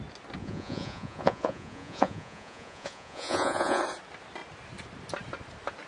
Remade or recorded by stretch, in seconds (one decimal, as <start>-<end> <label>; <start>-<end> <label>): 0.0-0.4 recorded; 0.4-3.8 remade; 3.8-5.9 recorded